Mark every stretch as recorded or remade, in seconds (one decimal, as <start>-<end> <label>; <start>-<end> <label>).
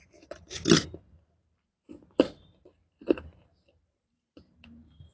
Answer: 0.0-2.8 remade; 2.8-3.8 recorded; 3.8-5.1 remade